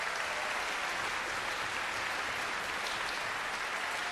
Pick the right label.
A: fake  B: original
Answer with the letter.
B